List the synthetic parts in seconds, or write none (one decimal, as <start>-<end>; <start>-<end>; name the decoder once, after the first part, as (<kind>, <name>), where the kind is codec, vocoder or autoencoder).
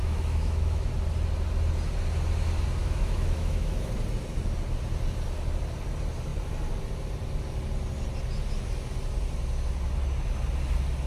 0.0-0.9 (autoencoder, DAC-VAE); 2.8-3.9